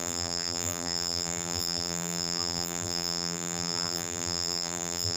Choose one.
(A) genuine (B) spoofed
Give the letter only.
B